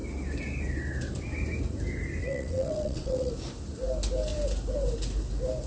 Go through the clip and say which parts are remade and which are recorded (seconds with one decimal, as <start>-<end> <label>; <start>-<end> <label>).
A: 0.0-2.2 recorded; 2.2-3.3 remade; 3.3-5.7 recorded